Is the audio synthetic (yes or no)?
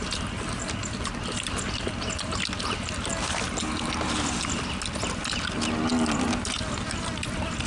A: no